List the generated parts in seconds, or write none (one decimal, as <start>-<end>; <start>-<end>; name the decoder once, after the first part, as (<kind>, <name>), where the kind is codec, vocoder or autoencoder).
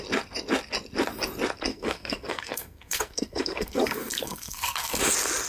1.7-5.0 (codec, SNAC)